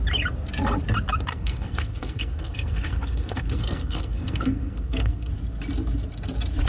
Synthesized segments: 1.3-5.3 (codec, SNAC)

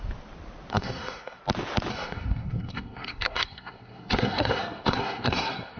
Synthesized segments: 0.7-1.4 (codec, SNAC); 1.9-5.8